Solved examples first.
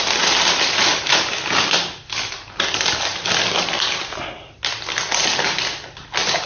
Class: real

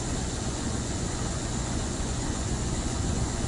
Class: fake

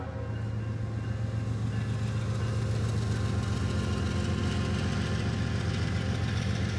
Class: real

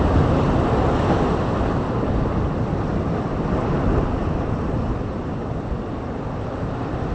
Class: real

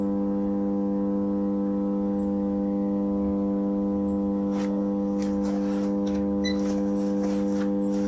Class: real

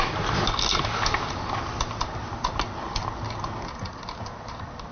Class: real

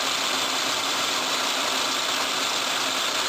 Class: real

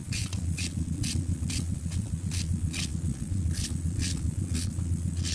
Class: fake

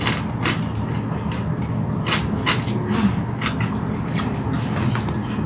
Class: real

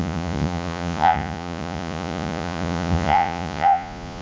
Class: fake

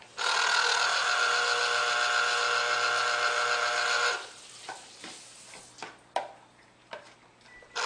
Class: real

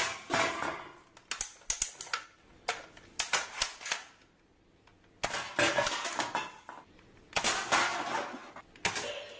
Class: real